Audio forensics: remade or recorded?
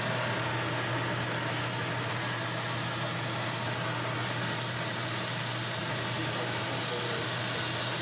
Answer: recorded